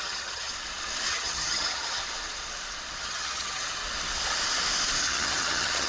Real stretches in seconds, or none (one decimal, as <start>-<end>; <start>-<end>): 0.5-1.1; 2.0-3.0; 3.8-5.0